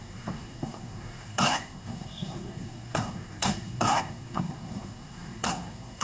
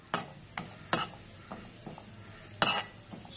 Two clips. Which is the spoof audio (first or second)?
first